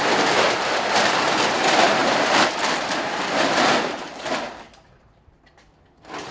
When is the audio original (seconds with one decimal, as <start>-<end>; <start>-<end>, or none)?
0.0-2.0; 5.7-6.3